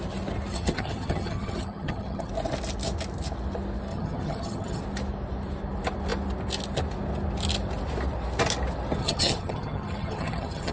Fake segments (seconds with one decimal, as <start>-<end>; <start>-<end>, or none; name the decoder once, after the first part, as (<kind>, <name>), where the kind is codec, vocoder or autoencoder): 0.5-2.3 (vocoder, HiFi-GAN); 3.9-4.8; 9.0-10.7